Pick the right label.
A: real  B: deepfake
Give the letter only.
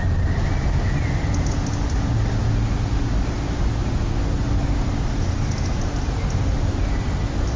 A